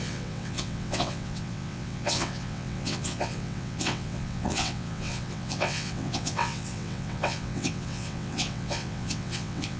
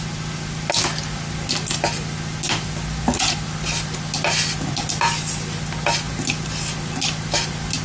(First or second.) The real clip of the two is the second